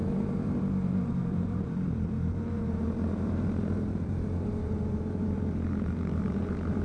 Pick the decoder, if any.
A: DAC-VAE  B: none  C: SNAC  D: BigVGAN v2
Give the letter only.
D